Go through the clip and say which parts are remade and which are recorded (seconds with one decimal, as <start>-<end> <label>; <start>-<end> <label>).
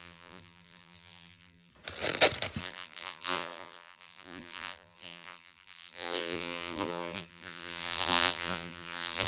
0.0-1.7 remade; 1.7-2.6 recorded; 2.6-9.3 remade